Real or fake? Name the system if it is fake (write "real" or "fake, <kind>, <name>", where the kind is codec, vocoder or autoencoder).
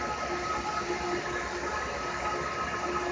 real